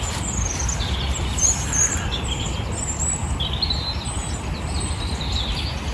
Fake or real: real